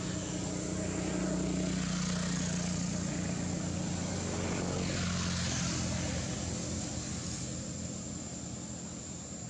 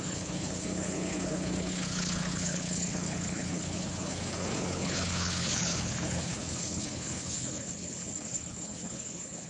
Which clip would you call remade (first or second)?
second